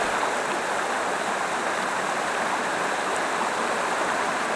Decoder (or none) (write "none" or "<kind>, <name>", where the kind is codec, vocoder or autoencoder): none